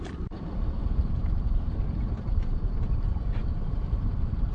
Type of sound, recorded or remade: remade